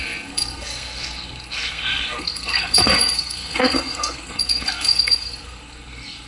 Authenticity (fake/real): fake